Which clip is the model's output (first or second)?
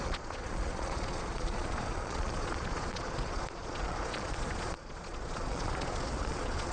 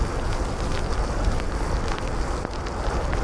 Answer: first